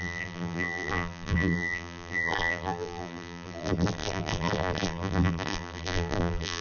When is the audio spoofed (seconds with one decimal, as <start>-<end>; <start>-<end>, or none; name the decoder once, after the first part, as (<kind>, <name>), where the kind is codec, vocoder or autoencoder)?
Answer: 0.0-6.6 (vocoder, BigVGAN v2)